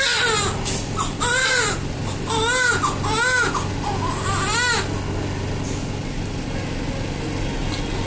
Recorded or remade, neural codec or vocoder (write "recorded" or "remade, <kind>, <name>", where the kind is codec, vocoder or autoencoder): recorded